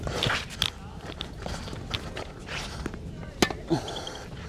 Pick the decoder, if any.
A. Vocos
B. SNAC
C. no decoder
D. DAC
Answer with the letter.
C